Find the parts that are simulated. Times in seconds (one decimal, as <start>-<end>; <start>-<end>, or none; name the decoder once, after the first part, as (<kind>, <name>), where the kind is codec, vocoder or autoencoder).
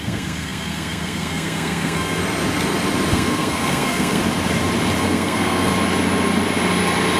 0.0-2.2 (codec, SNAC); 3.1-4.2; 5.0-5.7